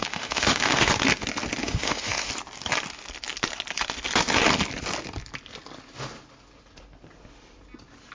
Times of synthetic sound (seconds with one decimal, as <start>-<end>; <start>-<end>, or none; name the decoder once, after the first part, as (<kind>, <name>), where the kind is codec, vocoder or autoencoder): 0.0-0.9 (autoencoder, DAC-VAE); 1.6-2.3